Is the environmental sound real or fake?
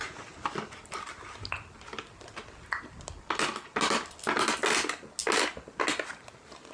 real